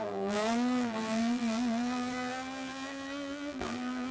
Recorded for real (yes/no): no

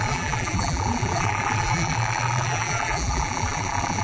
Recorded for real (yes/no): no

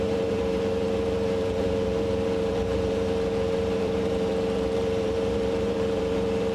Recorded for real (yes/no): no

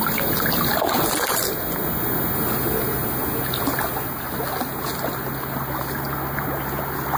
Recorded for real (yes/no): yes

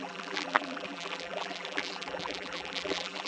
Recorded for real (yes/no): no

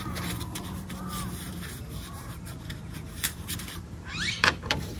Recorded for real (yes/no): no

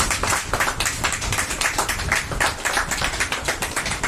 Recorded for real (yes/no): no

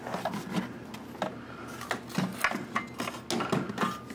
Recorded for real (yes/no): yes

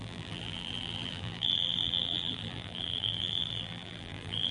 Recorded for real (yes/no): no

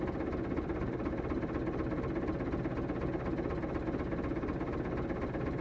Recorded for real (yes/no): yes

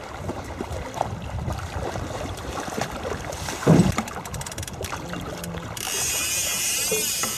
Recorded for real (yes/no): no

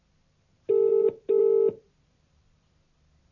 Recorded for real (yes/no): yes